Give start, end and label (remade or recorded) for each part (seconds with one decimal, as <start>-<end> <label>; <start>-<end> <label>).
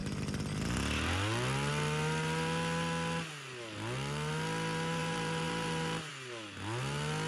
0.0-5.0 recorded; 5.0-6.1 remade; 6.1-7.3 recorded